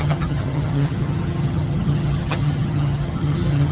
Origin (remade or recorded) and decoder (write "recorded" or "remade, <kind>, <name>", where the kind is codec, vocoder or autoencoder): remade, vocoder, HiFi-GAN